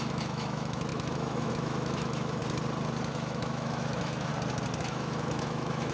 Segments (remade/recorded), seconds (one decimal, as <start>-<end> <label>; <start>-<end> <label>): 0.0-2.4 remade; 2.4-3.1 recorded; 3.1-4.3 remade; 4.3-4.8 recorded; 4.8-5.9 remade